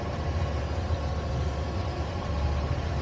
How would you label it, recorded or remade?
recorded